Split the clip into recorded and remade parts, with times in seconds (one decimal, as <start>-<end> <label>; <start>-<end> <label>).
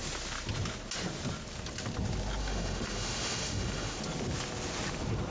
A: 0.0-2.4 recorded; 2.4-4.0 remade; 4.0-5.3 recorded